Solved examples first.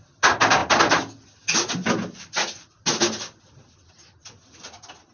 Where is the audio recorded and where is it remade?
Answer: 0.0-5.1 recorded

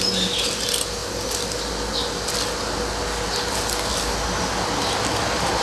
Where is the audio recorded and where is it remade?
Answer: 0.0-5.6 recorded

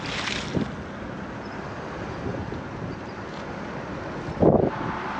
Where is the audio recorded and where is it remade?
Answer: 0.0-5.2 recorded

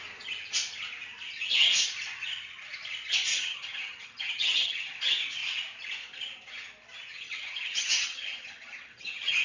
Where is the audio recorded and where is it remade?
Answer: 0.0-3.3 recorded; 3.3-5.0 remade; 5.0-7.1 recorded; 7.1-9.4 remade

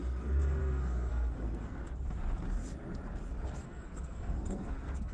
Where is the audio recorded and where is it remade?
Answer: 0.0-1.8 remade; 1.8-3.6 recorded; 3.6-5.1 remade

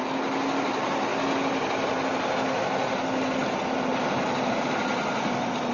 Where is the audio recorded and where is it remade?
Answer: 0.0-5.7 recorded